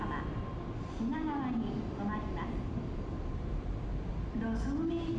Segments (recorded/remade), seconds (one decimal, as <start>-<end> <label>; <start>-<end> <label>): 0.0-5.2 recorded